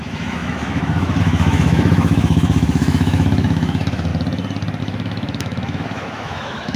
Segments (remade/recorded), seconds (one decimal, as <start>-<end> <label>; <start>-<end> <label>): 0.0-4.1 remade; 4.1-4.8 recorded; 4.8-6.8 remade